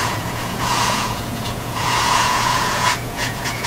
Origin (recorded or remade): remade